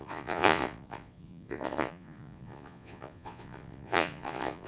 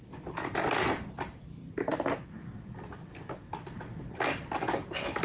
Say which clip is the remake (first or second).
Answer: first